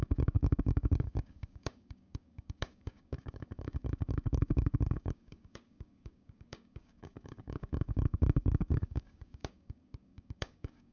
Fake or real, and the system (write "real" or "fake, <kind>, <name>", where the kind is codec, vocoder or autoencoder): fake, codec, DAC